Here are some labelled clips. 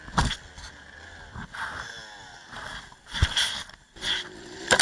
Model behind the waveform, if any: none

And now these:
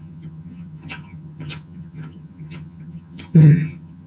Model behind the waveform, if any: vocoder, HiFi-GAN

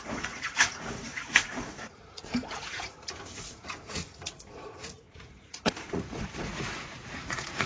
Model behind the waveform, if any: vocoder, Vocos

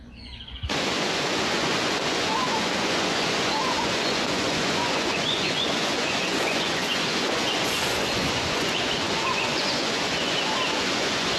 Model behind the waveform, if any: vocoder, Vocos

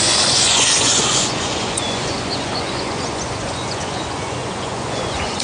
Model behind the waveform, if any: vocoder, Vocos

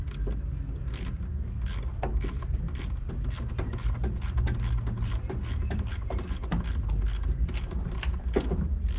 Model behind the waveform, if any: none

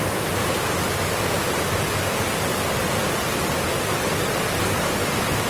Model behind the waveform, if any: none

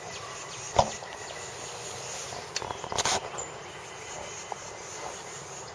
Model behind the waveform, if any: none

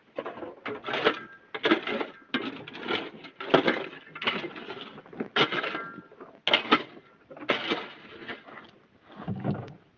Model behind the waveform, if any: none